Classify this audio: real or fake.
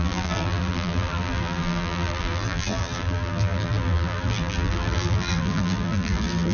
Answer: fake